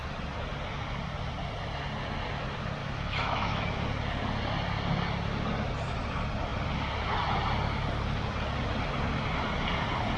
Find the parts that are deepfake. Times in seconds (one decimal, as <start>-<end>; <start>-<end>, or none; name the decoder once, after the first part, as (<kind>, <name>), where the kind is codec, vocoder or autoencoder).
2.8-3.6 (autoencoder, DAC-VAE)